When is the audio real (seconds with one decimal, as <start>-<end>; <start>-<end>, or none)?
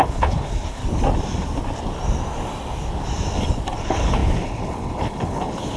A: 0.8-3.8